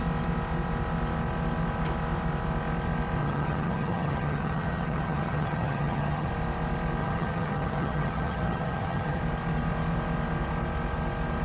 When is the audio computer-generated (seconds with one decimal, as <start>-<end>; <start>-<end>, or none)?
3.2-6.3; 7.0-9.2